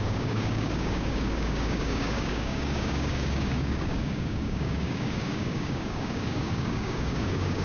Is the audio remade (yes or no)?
yes